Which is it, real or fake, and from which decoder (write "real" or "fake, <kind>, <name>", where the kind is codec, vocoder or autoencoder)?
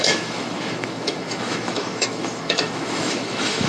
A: fake, autoencoder, DAC-VAE